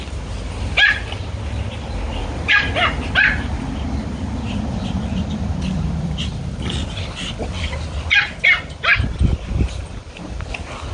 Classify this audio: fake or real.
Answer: real